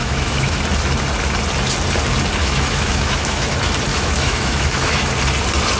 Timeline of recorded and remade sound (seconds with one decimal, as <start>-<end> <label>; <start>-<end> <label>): 0.0-0.6 remade; 0.6-2.4 recorded; 2.4-3.5 remade; 3.5-3.9 recorded; 3.9-5.1 remade; 5.1-5.8 recorded